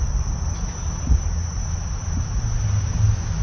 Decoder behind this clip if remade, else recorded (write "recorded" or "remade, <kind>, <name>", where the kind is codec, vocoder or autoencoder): recorded